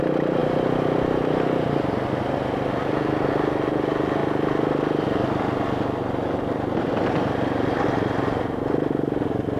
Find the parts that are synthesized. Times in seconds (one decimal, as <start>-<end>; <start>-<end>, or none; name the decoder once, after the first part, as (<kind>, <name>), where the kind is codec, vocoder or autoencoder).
none